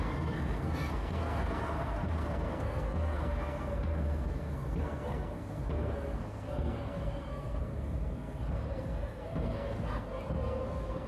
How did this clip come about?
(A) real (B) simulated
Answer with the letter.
B